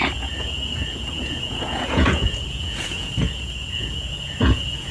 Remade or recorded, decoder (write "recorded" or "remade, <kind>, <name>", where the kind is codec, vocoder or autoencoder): remade, vocoder, Vocos